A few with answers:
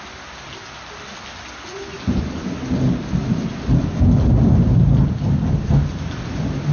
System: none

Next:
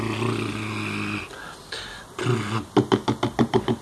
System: none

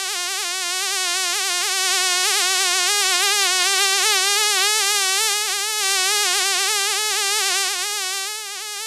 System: none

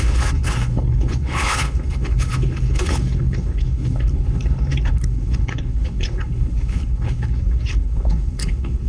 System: codec, HILCodec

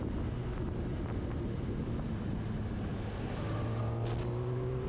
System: none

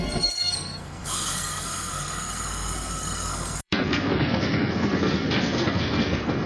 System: codec, SNAC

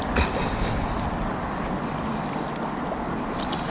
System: none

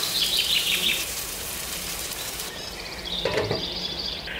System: vocoder, BigVGAN v2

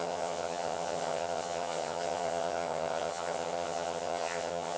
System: vocoder, HiFi-GAN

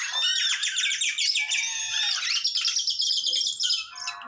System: none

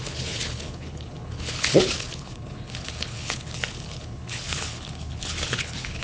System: codec, HILCodec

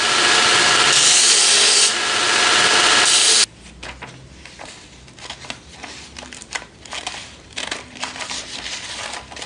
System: none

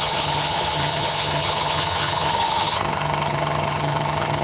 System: vocoder, HiFi-GAN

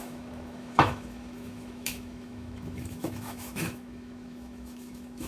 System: autoencoder, DAC-VAE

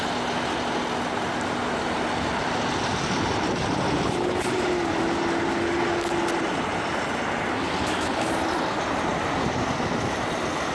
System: none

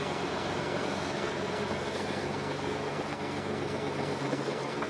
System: codec, SNAC